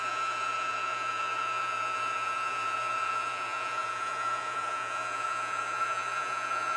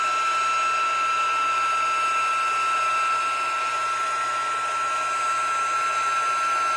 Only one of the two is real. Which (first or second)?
second